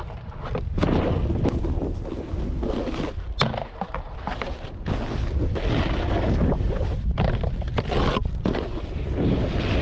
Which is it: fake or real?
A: real